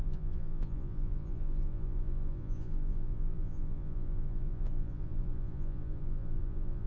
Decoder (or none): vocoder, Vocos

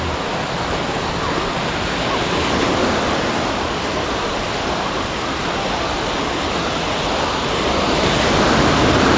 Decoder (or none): none